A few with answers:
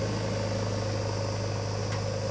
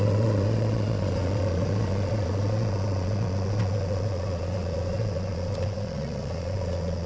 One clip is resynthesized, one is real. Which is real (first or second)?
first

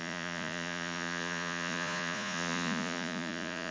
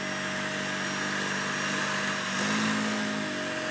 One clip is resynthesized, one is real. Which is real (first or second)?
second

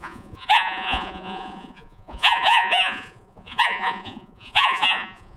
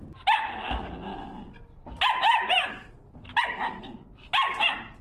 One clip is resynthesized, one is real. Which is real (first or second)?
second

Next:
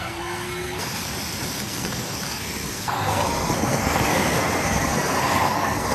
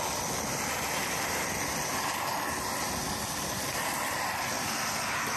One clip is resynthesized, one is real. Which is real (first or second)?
second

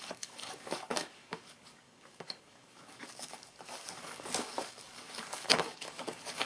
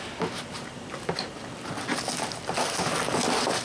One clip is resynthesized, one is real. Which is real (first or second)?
second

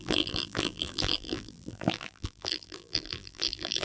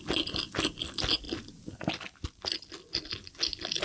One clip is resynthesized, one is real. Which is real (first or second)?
second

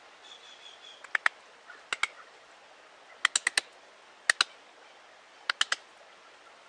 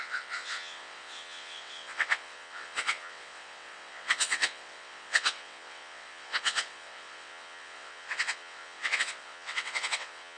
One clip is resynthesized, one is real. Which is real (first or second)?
first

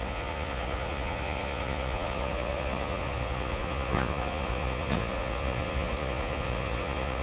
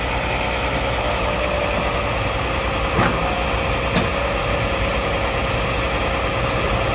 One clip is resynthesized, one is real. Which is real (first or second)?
second